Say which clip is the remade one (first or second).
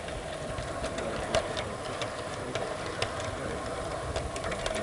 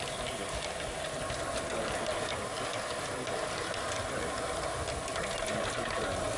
first